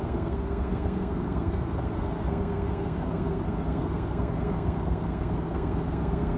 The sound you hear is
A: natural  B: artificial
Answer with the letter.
B